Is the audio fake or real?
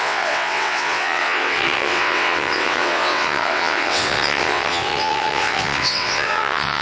fake